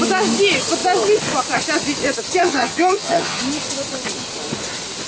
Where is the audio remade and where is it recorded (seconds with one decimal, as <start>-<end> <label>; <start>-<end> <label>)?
0.0-2.4 recorded; 2.4-3.4 remade; 3.4-5.1 recorded